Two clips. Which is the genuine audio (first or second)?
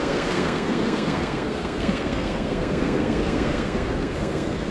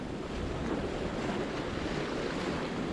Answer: second